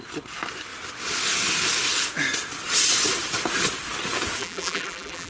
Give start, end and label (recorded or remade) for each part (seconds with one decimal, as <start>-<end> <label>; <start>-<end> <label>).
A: 0.0-4.4 recorded; 4.4-5.3 remade